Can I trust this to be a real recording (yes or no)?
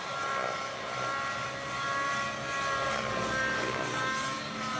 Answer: yes